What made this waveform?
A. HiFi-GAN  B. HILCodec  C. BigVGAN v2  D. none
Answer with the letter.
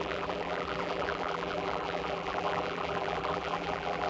C